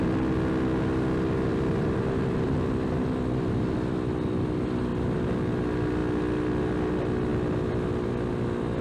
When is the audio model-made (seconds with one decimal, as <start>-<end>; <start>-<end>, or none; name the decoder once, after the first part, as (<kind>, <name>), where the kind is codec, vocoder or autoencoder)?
none